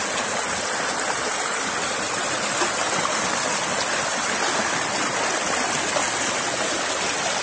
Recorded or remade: recorded